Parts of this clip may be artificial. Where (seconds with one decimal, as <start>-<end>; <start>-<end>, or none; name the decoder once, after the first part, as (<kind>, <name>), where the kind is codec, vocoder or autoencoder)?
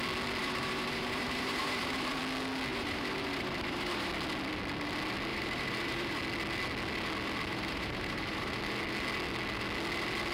0.4-2.2 (vocoder, BigVGAN v2); 2.7-4.1; 5.3-6.2; 7.5-8.6